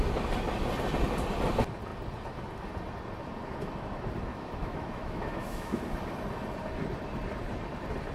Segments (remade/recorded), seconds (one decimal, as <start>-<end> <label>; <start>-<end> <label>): 0.0-4.3 recorded; 4.3-5.8 remade; 5.8-8.1 recorded